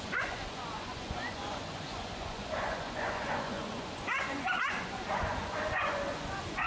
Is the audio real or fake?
fake